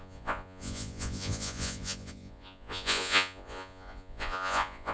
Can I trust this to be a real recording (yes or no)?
no